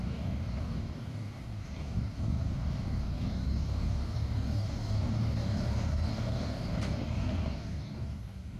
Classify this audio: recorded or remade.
remade